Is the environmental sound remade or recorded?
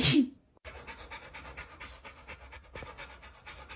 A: recorded